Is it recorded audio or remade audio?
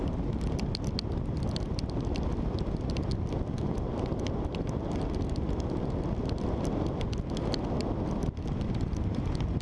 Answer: recorded